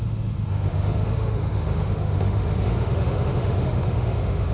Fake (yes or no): yes